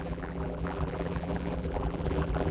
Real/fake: fake